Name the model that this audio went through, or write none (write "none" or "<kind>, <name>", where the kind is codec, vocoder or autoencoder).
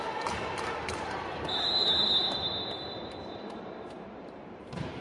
vocoder, BigVGAN v2